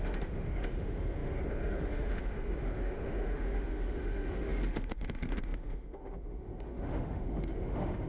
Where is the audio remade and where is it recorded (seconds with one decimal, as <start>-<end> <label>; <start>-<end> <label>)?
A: 0.0-8.1 remade